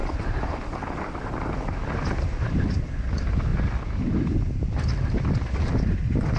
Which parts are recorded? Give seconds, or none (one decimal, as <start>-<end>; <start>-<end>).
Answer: 0.5-6.4